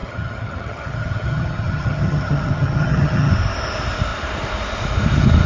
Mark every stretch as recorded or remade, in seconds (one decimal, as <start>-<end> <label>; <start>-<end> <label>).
0.0-3.3 remade; 3.3-5.5 recorded